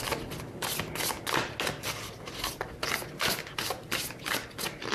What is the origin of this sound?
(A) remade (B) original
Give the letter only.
B